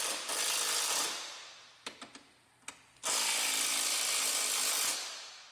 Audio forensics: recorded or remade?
recorded